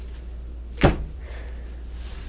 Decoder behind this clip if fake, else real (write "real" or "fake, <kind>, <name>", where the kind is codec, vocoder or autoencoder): real